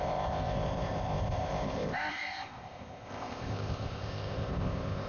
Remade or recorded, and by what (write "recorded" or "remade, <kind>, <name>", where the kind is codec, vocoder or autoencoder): remade, codec, ZipCodec